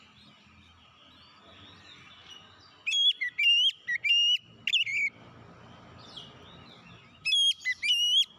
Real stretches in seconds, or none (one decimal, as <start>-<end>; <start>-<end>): 0.0-8.4